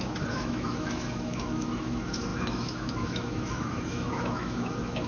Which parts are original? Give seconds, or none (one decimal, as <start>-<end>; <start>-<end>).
none